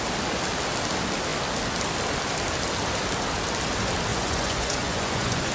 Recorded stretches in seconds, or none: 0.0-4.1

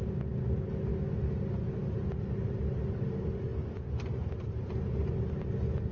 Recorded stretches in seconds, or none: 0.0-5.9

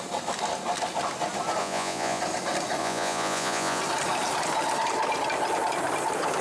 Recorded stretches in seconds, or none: 0.0-1.6; 2.2-2.8; 3.8-6.4

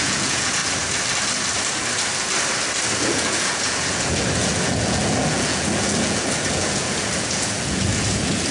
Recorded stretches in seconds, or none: 0.6-3.0

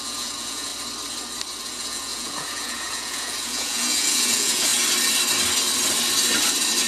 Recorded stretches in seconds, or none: 0.7-1.6; 4.7-6.9

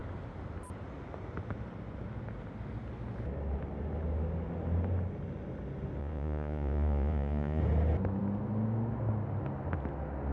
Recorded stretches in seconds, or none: 0.0-6.0; 7.6-10.3